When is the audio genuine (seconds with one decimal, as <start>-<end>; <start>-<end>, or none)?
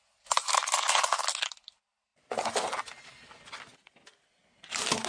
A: 0.0-5.1